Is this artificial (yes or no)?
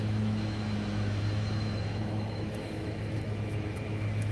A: yes